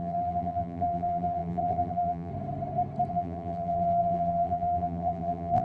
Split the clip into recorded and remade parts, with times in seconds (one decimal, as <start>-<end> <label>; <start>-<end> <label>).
0.0-2.3 remade; 2.3-3.1 recorded; 3.1-5.6 remade